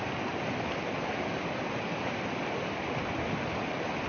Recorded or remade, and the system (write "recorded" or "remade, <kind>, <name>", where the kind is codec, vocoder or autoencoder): recorded